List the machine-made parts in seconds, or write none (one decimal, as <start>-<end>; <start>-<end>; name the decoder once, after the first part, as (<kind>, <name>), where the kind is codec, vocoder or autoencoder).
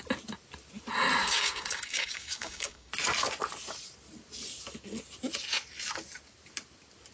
1.2-2.9 (codec, DAC)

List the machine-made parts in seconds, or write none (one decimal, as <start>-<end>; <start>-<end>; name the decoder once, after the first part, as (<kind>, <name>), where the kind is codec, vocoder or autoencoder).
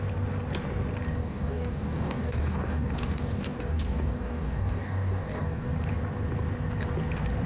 1.2-5.7 (codec, DAC)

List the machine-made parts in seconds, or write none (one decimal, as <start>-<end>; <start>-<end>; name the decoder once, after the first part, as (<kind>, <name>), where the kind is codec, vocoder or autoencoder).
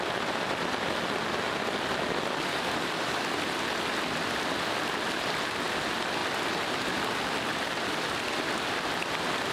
2.5-3.3 (codec, DAC)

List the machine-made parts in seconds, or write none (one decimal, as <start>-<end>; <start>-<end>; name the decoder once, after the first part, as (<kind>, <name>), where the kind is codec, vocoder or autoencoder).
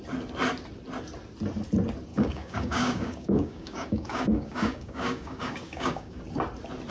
2.1-6.2 (codec, DAC)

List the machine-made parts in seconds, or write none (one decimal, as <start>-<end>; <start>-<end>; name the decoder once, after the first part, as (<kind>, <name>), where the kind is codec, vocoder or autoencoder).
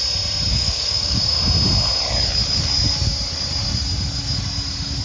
0.5-1.4 (codec, DAC)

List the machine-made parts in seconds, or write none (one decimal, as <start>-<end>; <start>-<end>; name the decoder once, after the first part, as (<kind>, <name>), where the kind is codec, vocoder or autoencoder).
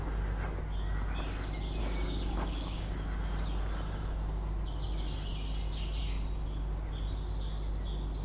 1.8-2.9 (codec, DAC)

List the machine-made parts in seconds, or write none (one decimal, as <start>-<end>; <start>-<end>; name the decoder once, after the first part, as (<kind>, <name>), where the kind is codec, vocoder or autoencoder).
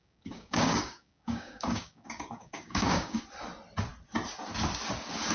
0.0-3.2 (codec, DAC)